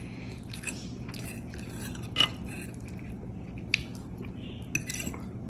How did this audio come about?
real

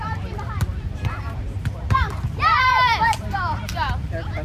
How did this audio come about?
fake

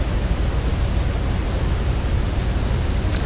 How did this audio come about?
real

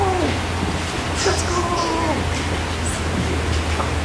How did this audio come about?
real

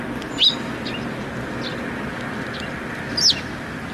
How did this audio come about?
real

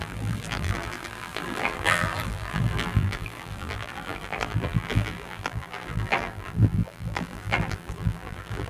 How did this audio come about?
fake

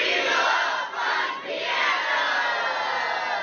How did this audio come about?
real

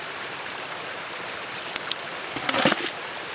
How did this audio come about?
fake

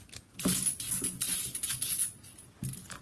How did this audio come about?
real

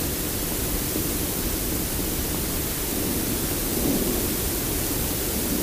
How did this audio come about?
real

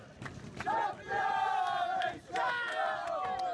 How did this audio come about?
real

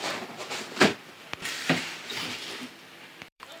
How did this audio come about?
fake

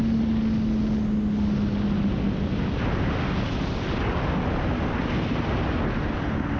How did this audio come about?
real